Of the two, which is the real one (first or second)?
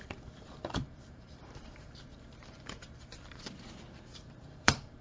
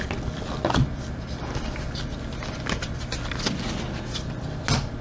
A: second